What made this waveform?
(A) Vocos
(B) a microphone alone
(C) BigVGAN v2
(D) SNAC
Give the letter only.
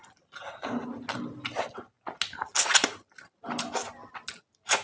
B